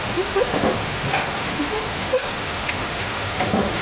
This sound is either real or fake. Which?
fake